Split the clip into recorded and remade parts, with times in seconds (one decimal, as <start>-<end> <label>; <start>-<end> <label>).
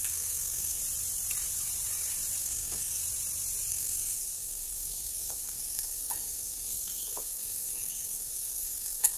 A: 0.0-0.8 remade; 0.8-2.4 recorded; 2.4-3.0 remade; 3.0-3.7 recorded; 3.7-9.2 remade